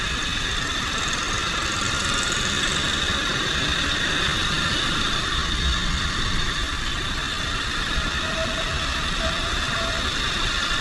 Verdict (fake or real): real